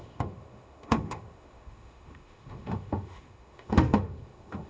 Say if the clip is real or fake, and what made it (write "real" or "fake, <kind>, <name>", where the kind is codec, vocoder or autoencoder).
fake, autoencoder, DAC-VAE